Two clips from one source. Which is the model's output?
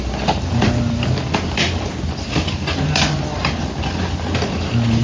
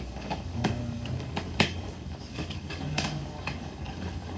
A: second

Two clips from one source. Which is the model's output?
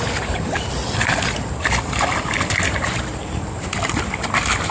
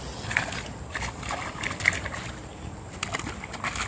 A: first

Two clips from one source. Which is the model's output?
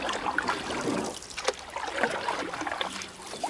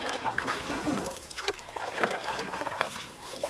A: second